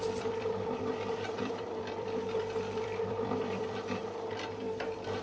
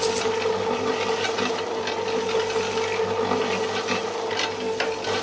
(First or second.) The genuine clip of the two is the second